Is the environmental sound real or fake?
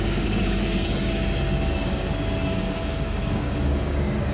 fake